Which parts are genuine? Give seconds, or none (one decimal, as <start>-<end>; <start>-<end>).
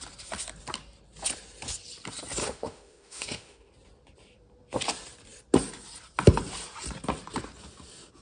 0.0-2.4; 3.7-8.2